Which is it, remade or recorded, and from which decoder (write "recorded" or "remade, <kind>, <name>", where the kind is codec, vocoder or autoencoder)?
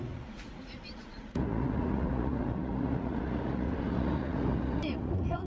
remade, vocoder, Vocos